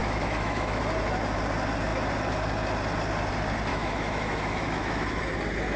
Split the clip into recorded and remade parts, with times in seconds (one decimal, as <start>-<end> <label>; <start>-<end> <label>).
0.0-0.8 remade; 0.8-3.7 recorded; 3.7-5.2 remade; 5.2-5.8 recorded